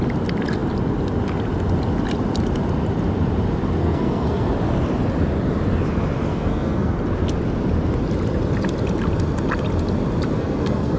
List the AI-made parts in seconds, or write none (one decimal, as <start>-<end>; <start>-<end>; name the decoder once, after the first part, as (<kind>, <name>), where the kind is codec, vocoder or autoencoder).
3.8-4.5 (codec, SNAC); 6.3-6.9; 10.3-11.0